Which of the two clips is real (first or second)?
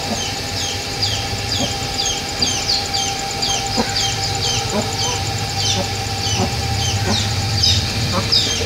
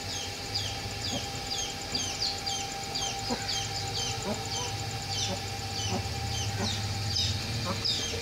second